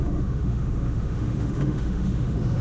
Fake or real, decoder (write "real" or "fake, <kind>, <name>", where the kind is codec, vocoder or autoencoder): fake, autoencoder, DAC-VAE